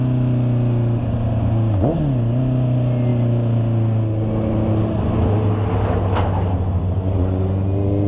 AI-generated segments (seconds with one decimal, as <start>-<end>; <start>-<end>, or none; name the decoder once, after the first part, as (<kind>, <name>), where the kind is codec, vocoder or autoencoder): none